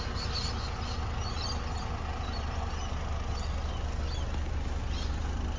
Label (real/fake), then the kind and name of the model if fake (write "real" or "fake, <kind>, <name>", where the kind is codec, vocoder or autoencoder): real